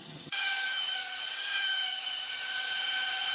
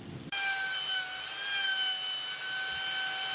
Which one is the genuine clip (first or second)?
second